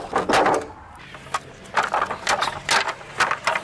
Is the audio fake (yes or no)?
no